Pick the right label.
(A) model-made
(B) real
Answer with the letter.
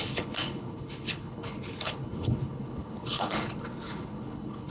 A